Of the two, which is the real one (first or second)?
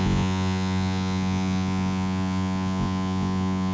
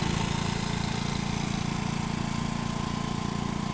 second